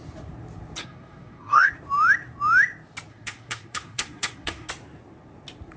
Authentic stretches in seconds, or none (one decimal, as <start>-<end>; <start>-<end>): 0.0-0.8; 1.7-3.1; 4.7-5.8